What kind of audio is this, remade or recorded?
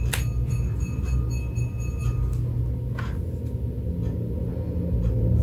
recorded